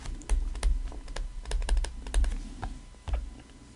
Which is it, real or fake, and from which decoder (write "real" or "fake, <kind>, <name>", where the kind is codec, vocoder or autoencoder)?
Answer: real